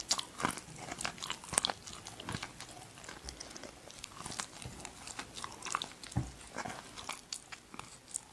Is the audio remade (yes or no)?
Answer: no